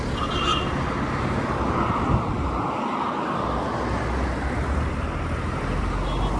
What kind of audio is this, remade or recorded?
recorded